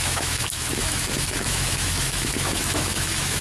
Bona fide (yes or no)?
no